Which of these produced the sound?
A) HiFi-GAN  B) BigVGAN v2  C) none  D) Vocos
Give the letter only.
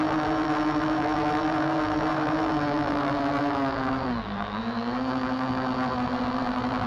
B